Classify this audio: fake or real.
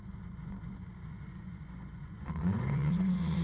fake